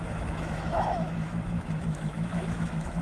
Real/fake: fake